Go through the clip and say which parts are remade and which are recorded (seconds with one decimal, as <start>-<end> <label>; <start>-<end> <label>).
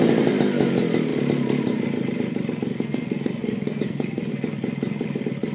0.0-2.7 recorded; 2.7-4.3 remade; 4.3-5.5 recorded